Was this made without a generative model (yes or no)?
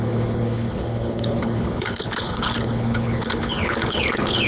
no